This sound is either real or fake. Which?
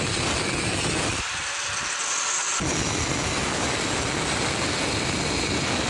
real